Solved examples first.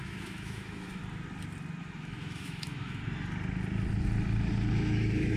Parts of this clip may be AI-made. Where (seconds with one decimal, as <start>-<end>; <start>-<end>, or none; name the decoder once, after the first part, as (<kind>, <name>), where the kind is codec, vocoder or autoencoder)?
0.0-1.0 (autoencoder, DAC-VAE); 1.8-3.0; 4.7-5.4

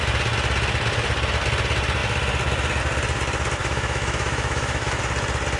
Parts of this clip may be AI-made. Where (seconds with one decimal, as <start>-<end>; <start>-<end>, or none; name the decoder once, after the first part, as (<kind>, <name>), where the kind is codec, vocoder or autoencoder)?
3.6-5.0 (autoencoder, DAC-VAE)

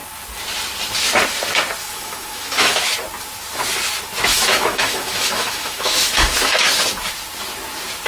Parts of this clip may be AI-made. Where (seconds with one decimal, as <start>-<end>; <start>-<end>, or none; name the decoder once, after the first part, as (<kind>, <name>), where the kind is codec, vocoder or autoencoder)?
1.8-2.7 (autoencoder, DAC-VAE); 4.3-6.7

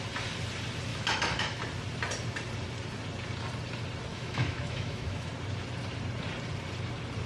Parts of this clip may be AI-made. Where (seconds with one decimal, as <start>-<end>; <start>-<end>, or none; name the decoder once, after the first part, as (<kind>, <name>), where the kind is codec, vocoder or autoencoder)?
0.9-1.6 (autoencoder, DAC-VAE); 4.1-5.3

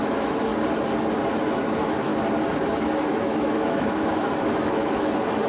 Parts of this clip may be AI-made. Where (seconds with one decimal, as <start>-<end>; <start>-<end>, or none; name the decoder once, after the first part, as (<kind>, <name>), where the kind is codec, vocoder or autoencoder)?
0.0-0.5 (autoencoder, DAC-VAE); 1.3-2.1; 2.6-5.5

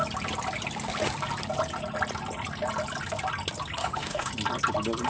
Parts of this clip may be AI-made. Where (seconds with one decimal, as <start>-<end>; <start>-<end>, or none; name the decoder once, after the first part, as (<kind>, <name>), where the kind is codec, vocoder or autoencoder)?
3.8-4.3 (autoencoder, DAC-VAE)